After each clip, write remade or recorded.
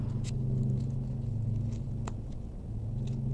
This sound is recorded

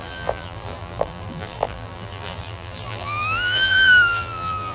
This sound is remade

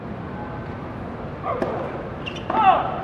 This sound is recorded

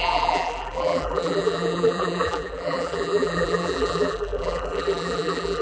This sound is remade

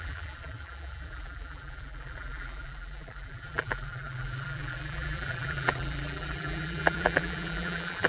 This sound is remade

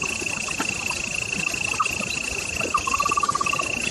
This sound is recorded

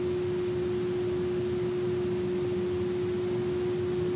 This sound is recorded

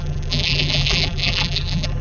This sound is remade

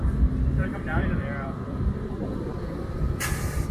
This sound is remade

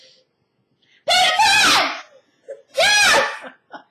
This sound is recorded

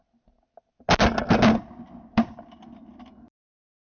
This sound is recorded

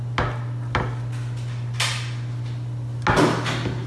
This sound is recorded